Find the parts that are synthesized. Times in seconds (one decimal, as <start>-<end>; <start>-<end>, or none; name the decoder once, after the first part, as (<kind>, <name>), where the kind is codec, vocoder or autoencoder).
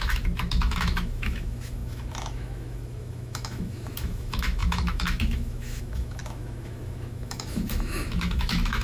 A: 0.0-8.8 (autoencoder, DAC-VAE)